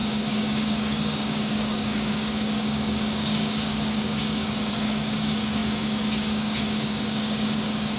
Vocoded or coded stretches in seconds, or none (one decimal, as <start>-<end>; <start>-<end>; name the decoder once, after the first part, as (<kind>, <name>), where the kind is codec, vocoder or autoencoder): 0.0-8.0 (codec, DAC)